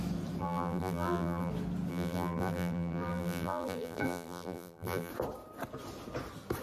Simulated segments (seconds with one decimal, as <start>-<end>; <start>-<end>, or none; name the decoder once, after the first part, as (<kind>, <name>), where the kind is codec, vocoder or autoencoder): 0.4-1.5 (vocoder, BigVGAN v2); 1.9-5.1